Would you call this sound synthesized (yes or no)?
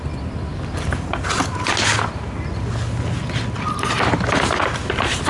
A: no